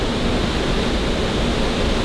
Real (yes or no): yes